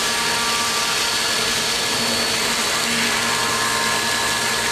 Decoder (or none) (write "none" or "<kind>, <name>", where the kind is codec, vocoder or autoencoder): none